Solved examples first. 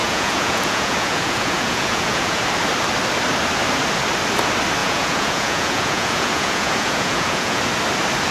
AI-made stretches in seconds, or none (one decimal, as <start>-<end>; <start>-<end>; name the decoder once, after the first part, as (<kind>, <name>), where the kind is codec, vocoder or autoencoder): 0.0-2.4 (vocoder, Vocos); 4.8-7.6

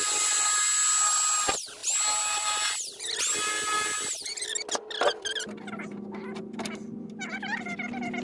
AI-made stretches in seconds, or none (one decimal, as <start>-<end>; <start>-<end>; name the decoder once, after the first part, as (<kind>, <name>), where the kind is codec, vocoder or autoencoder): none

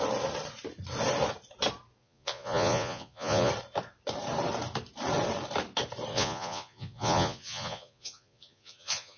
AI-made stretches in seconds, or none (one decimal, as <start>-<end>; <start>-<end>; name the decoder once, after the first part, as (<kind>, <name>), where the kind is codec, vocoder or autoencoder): 2.0-3.5 (vocoder, Vocos); 6.1-9.2